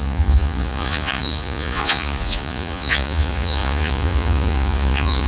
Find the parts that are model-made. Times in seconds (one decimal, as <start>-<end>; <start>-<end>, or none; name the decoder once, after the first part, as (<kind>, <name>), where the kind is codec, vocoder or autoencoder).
0.0-5.3 (vocoder, Vocos)